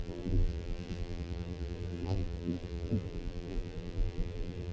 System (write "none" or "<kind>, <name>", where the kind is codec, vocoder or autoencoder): vocoder, BigVGAN v2